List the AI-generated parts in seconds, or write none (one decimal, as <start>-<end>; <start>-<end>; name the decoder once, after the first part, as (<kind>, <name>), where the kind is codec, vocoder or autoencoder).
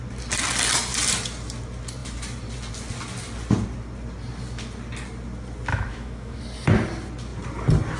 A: 5.7-6.4 (autoencoder, DAC-VAE)